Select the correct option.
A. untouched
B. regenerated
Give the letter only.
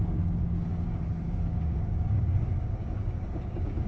B